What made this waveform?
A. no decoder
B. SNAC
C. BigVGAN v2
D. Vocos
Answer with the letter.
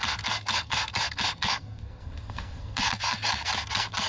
B